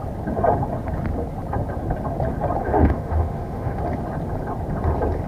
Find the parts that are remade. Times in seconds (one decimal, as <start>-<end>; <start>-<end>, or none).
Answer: 2.6-3.8